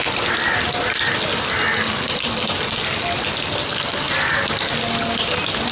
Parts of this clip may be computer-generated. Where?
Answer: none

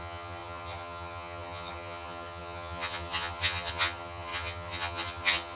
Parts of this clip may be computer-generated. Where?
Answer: 0.0-5.6 (vocoder, HiFi-GAN)

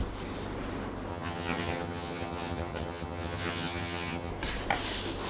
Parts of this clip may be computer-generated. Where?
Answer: 1.1-4.3 (vocoder, HiFi-GAN)

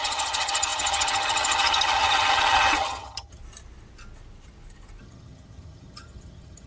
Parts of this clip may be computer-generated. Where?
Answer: 0.0-3.4 (vocoder, HiFi-GAN); 5.0-6.7

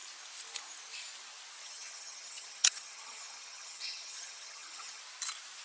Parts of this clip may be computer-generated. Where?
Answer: 1.6-5.0 (vocoder, HiFi-GAN)